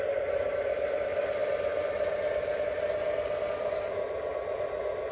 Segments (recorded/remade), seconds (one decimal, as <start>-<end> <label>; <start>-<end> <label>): 0.0-5.1 recorded